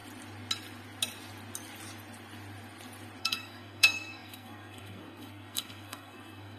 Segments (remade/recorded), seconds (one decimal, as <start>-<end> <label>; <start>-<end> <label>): 0.0-3.2 recorded; 3.2-6.6 remade